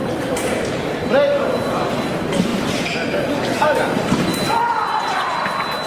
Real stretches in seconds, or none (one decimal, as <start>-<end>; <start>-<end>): 1.0-2.5; 3.2-4.3

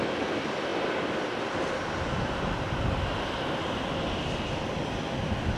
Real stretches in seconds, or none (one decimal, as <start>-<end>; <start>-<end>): 0.0-5.6

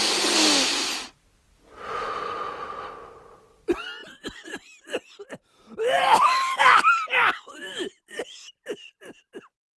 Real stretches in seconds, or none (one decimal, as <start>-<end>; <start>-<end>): 0.0-4.0; 9.0-9.8

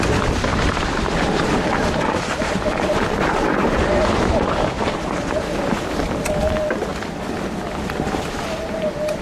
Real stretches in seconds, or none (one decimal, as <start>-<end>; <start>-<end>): 0.0-0.5; 4.8-9.2